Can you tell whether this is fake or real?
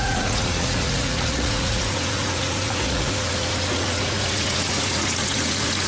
fake